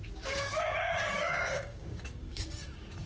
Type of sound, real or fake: fake